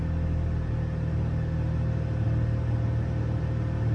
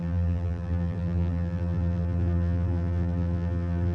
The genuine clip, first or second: first